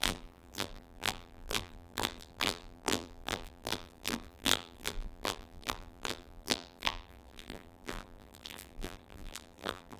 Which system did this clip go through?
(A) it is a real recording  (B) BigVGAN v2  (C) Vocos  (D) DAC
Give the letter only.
B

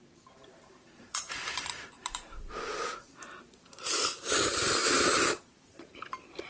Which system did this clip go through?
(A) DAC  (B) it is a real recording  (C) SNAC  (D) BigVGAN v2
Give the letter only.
D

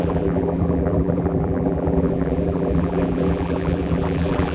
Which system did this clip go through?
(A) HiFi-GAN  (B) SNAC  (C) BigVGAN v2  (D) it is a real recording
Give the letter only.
C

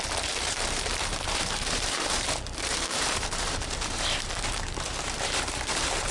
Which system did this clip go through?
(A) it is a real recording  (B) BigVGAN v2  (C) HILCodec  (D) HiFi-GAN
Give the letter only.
B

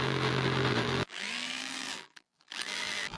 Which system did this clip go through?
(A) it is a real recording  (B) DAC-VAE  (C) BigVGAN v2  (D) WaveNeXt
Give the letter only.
C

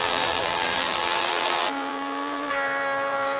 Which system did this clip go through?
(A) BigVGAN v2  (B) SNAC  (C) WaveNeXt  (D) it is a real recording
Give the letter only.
A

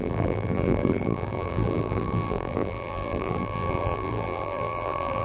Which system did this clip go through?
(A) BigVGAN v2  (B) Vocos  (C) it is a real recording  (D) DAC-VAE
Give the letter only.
A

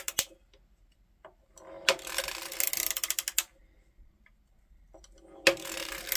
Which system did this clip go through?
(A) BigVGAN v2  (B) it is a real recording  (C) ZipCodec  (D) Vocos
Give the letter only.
B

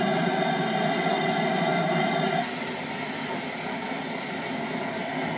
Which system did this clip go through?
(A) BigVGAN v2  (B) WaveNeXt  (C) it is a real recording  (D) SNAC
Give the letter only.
C